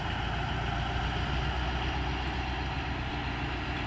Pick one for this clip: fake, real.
real